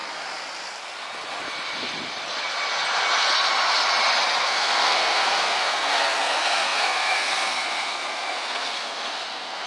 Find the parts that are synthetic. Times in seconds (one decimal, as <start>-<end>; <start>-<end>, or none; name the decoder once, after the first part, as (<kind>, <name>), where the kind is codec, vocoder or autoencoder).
4.4-9.7 (codec, SNAC)

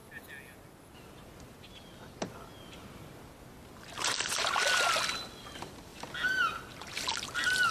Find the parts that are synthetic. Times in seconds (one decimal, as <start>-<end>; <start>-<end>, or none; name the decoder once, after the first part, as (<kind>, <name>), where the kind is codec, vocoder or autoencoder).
none

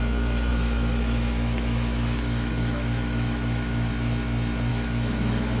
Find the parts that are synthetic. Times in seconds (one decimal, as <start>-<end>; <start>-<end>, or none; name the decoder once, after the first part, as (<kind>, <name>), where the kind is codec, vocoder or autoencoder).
0.5-3.9 (autoencoder, DAC-VAE); 4.7-5.6

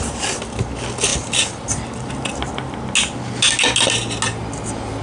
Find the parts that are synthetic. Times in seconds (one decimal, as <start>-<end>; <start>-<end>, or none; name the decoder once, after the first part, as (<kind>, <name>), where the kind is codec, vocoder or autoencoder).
none

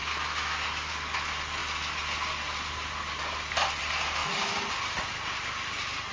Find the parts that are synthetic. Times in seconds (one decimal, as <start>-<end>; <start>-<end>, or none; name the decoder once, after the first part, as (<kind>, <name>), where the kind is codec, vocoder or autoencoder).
0.0-0.9 (autoencoder, DAC-VAE)

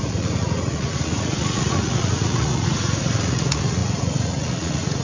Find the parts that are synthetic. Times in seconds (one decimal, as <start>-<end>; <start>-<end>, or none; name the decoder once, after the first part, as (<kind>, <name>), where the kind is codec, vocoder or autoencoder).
0.0-5.0 (vocoder, Vocos)

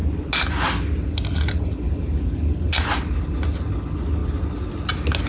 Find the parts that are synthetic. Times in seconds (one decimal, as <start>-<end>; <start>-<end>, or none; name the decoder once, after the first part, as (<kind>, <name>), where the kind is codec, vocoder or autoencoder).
none